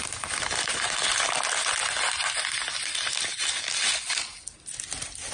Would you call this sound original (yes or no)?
yes